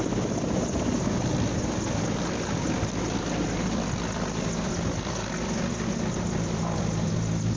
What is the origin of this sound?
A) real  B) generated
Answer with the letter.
A